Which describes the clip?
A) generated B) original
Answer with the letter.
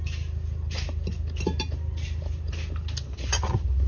B